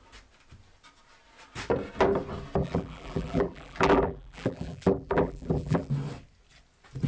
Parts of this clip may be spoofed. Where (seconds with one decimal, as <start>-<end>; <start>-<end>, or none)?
2.6-5.9